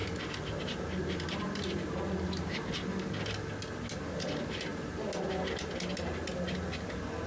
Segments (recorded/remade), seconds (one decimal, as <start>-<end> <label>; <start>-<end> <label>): 0.0-7.3 recorded